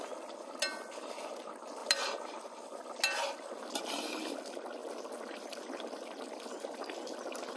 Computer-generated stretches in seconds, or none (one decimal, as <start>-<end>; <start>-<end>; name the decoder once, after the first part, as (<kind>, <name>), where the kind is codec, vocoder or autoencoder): none